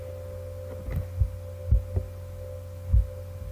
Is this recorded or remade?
recorded